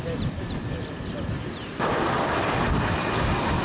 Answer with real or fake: real